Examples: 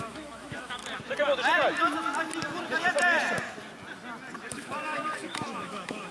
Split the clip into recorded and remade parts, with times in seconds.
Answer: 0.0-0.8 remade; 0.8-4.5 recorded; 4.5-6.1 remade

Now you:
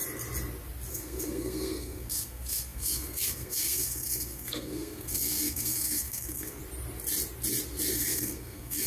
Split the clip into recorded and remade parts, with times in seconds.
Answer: 0.0-0.9 recorded; 0.9-6.6 remade; 6.6-7.9 recorded; 7.9-8.9 remade

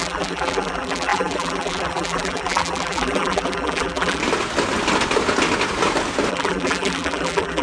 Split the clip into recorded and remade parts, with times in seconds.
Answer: 0.0-4.2 remade; 4.2-6.3 recorded; 6.3-7.6 remade